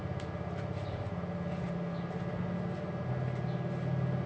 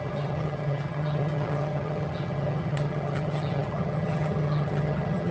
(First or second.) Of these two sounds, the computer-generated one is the second